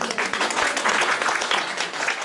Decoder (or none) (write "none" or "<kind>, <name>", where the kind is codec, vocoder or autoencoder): vocoder, Vocos